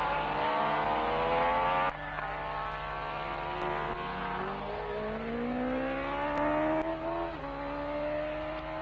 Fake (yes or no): no